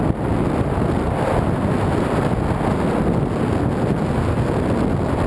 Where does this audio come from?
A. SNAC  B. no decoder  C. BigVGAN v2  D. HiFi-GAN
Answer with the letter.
B